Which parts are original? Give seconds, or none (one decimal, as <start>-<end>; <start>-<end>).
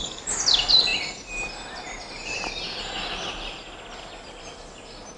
0.0-5.2